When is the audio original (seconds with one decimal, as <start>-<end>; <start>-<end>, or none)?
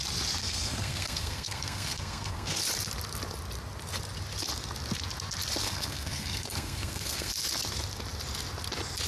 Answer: 0.0-0.4; 2.6-5.6; 7.3-9.1